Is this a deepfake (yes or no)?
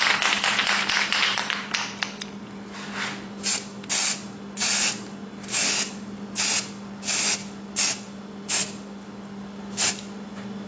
no